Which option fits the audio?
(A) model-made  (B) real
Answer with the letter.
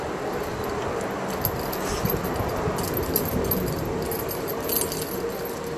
B